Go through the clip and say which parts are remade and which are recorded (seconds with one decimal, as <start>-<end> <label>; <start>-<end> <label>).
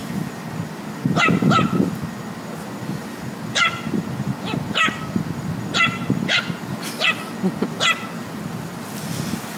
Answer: 0.0-9.6 recorded